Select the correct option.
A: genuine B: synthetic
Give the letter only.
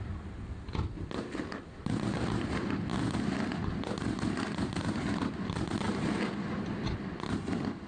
B